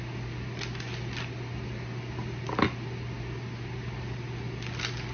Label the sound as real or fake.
real